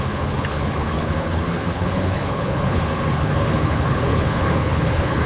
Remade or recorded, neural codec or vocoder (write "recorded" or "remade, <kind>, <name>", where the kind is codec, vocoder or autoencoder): remade, codec, HILCodec